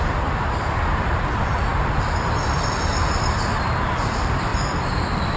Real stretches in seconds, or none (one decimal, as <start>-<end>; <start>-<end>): none